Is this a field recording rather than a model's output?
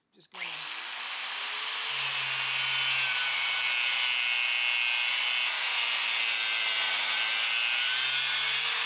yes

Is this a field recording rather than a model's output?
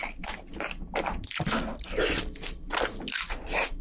yes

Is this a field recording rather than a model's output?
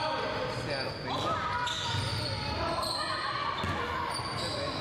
yes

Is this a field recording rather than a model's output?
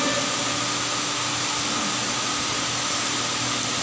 yes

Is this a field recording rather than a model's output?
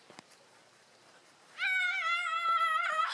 no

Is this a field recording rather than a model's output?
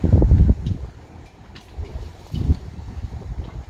no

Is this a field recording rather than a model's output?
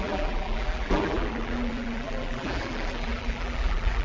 no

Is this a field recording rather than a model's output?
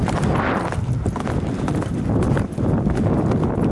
yes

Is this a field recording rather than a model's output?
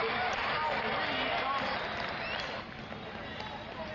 no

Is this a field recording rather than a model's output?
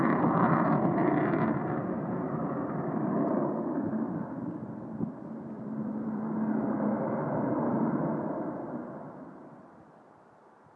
no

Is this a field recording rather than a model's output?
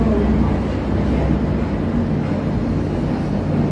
yes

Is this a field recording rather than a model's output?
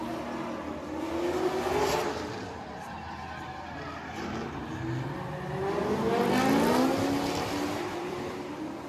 yes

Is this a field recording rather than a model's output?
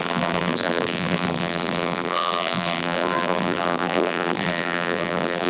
no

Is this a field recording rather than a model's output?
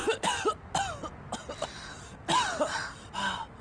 yes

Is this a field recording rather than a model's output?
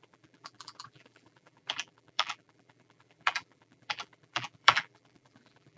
no